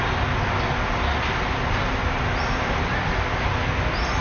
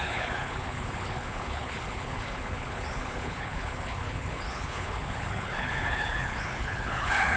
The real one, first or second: first